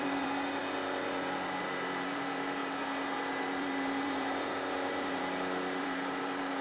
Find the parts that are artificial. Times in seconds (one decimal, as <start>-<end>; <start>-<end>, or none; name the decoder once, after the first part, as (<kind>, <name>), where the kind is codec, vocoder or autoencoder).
0.0-0.6 (vocoder, BigVGAN v2); 1.6-6.6